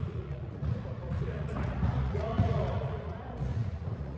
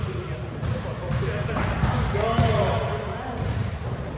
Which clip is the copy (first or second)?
first